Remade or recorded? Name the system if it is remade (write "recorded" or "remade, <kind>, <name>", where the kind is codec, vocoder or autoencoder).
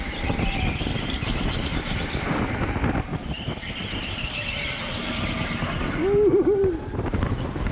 recorded